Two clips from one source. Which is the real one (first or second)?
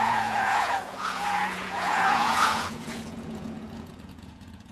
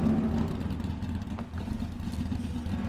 second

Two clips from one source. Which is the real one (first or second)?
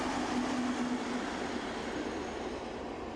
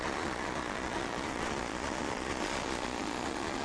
first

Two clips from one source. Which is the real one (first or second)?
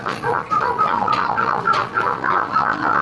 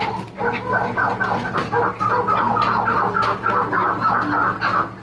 second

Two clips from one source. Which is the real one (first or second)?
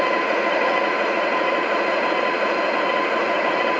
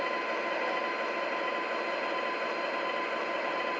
second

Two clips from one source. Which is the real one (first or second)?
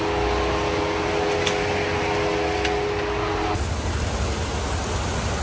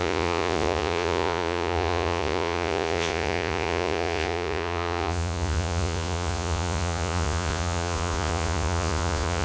first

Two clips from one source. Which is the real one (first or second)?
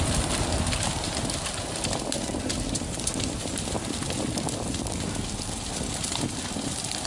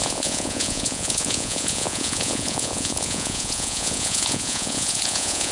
first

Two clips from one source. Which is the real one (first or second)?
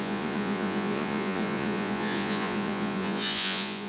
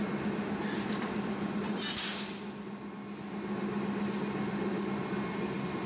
second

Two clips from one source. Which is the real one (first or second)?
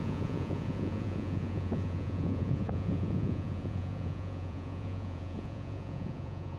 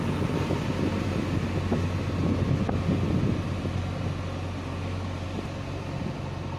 second